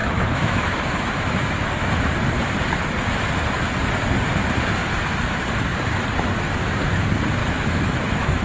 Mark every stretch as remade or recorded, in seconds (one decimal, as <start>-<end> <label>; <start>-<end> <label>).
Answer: 0.0-1.7 remade; 1.7-7.4 recorded; 7.4-8.4 remade